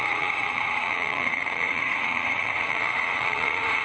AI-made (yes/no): yes